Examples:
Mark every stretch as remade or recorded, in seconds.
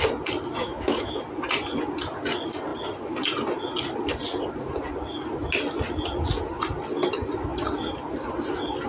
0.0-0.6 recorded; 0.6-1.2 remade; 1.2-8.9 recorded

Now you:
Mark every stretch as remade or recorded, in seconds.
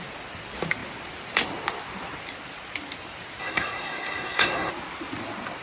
0.0-3.4 recorded; 3.4-4.7 remade; 4.7-5.6 recorded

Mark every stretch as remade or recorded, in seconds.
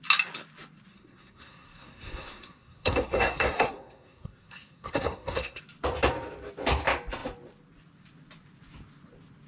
0.0-0.9 recorded; 0.9-5.6 remade; 5.6-9.5 recorded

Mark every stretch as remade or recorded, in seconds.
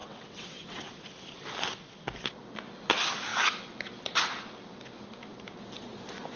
0.0-0.9 remade; 0.9-6.4 recorded